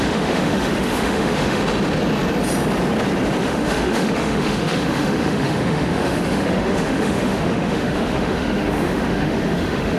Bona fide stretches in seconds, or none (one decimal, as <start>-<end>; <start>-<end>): 1.6-3.4